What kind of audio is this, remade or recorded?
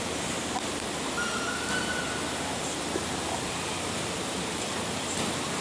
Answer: recorded